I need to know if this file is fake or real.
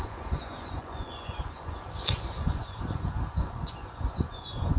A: fake